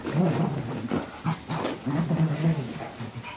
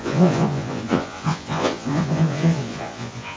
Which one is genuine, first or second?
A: first